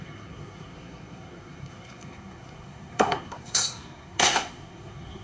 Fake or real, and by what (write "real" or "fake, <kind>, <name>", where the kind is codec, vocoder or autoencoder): fake, codec, SNAC